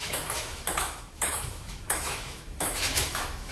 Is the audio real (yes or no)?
no